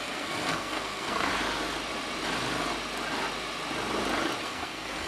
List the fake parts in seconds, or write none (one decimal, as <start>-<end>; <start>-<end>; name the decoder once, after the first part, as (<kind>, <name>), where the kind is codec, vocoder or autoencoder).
0.0-1.3 (codec, SNAC); 4.4-5.1